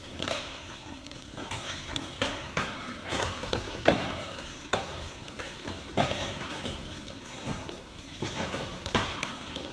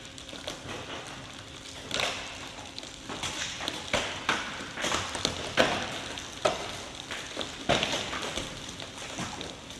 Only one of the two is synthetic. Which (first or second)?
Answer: first